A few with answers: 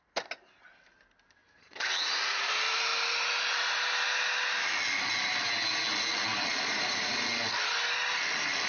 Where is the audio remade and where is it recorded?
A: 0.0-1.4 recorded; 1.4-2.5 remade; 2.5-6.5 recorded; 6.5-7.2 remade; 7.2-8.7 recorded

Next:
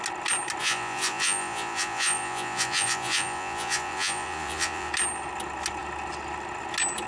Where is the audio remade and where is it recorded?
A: 0.0-0.6 recorded; 0.6-4.9 remade; 4.9-7.1 recorded

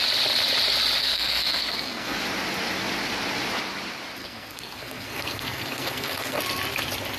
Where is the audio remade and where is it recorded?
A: 0.0-1.0 recorded; 1.0-2.2 remade; 2.2-4.2 recorded; 4.2-6.4 remade; 6.4-7.2 recorded